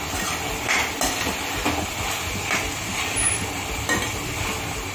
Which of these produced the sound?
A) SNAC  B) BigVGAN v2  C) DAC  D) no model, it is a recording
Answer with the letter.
D